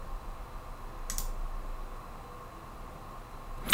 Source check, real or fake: real